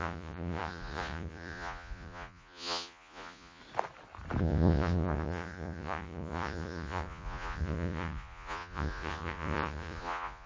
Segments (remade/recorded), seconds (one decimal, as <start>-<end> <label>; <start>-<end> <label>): 0.0-3.6 remade; 3.6-4.4 recorded; 4.4-10.5 remade